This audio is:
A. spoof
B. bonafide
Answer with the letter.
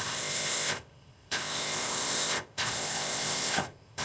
A